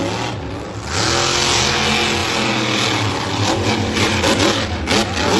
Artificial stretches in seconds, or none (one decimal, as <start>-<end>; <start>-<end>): 2.2-4.8